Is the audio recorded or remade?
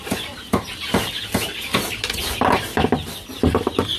recorded